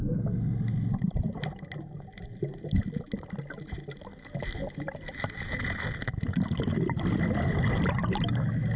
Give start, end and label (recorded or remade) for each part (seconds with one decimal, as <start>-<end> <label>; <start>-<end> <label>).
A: 0.0-8.8 recorded